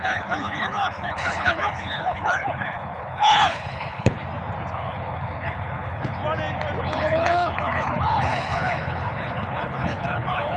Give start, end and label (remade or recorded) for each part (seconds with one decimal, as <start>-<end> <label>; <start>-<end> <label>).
0.0-4.2 remade; 4.2-4.7 recorded; 4.7-6.2 remade; 6.2-6.8 recorded; 6.8-10.6 remade